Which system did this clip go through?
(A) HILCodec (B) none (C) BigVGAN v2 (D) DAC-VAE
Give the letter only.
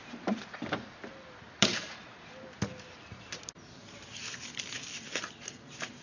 C